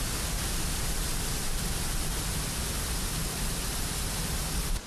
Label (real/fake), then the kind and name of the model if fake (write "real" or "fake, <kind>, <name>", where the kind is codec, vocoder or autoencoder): real